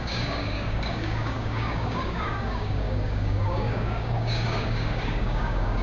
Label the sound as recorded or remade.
remade